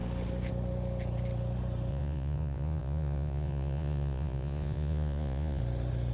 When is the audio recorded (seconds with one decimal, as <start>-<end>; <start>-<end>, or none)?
0.0-1.9; 5.6-6.1